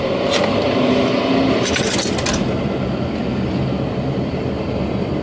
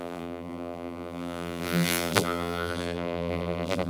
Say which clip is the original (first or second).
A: first